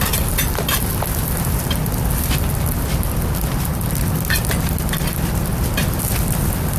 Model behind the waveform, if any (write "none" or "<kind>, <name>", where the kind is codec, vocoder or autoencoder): none